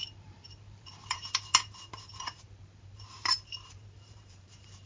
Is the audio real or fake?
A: fake